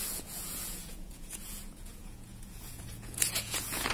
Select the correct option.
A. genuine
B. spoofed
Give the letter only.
B